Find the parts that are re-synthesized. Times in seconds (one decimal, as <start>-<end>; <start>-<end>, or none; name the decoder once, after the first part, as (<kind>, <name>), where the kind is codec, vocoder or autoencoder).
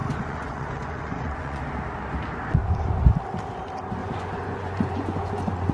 0.0-1.6 (vocoder, Vocos); 4.0-5.7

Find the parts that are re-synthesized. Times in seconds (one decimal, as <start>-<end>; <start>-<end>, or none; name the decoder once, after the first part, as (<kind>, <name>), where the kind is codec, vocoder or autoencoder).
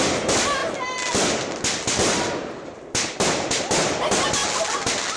none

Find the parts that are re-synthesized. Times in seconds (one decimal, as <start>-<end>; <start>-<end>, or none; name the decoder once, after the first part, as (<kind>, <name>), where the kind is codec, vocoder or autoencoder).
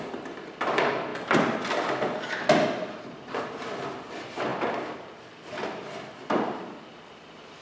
none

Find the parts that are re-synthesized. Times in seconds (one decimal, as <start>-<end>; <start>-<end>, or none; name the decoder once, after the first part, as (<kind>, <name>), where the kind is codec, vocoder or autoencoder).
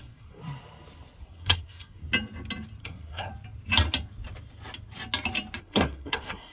0.0-0.4 (codec, SNAC); 1.2-2.0; 2.8-3.3; 5.6-6.5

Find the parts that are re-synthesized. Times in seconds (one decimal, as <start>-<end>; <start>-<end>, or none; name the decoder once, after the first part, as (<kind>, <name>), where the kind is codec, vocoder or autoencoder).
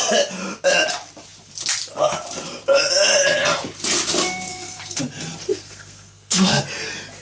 4.5-5.0 (codec, SNAC); 5.5-6.6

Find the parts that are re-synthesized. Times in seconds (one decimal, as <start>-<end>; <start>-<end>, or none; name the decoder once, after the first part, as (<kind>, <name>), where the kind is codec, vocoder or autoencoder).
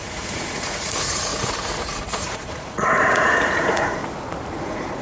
0.0-4.0 (vocoder, Vocos); 4.6-5.0